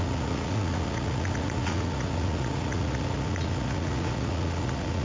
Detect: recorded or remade remade